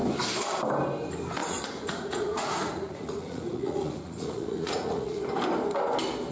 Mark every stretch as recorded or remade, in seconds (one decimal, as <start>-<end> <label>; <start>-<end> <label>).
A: 0.0-1.4 recorded; 1.4-5.2 remade; 5.2-6.3 recorded